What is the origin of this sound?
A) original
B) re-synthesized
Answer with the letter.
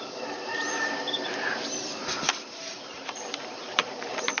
B